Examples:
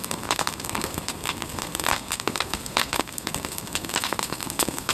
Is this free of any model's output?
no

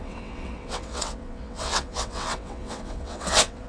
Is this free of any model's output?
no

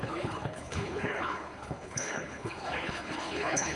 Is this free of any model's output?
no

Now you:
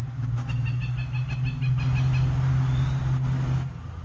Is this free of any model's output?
yes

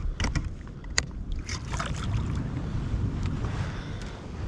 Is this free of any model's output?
yes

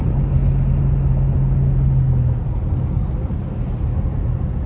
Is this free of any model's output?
yes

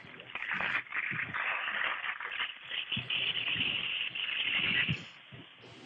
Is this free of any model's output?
yes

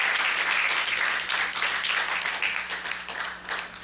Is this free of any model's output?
yes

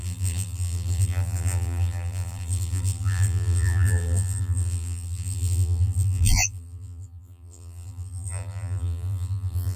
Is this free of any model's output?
no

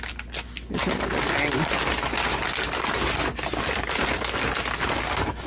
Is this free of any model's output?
yes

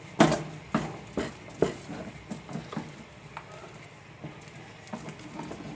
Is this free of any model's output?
yes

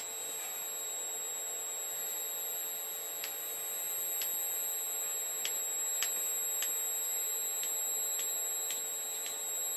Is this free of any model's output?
yes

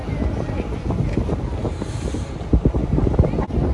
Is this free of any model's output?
yes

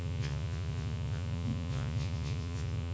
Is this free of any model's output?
no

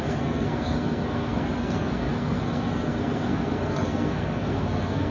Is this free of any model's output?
no